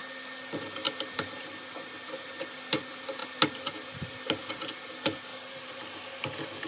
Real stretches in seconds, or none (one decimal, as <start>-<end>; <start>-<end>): 0.0-6.7